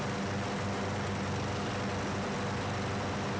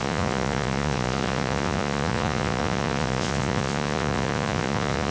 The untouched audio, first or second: first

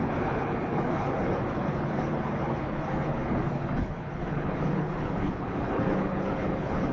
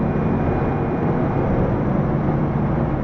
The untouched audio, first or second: second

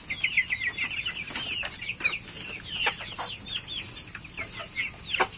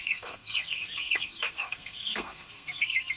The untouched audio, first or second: first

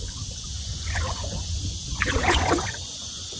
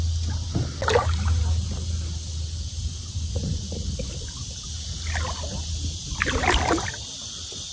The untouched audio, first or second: second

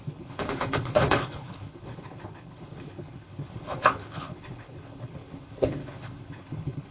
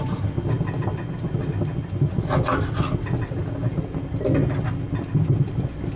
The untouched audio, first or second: second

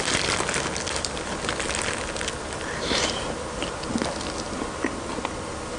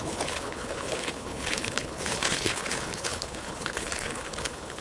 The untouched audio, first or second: first